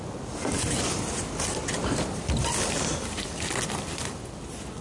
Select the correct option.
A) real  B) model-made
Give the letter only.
A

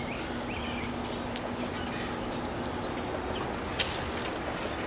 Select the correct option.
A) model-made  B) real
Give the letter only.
B